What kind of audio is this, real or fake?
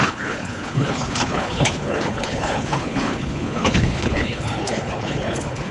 fake